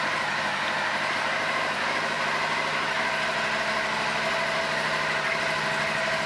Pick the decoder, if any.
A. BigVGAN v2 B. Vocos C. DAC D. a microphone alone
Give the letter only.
D